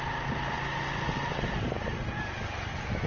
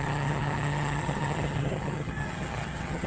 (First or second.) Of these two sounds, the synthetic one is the second